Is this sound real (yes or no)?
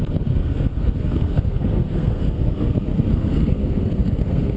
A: no